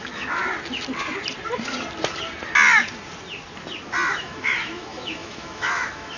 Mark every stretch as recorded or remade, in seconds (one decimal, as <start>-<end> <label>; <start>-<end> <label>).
0.0-0.4 remade; 0.4-4.1 recorded; 4.1-6.2 remade